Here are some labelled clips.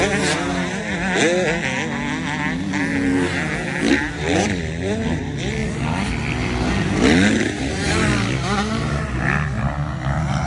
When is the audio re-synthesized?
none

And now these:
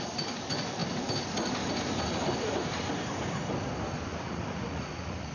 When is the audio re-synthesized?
4.1-5.3 (vocoder, Vocos)

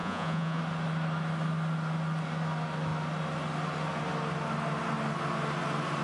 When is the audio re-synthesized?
0.0-0.6 (vocoder, Vocos)

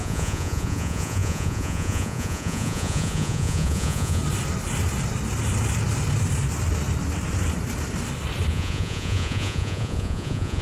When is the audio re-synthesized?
0.0-4.2 (vocoder, Vocos); 8.5-10.6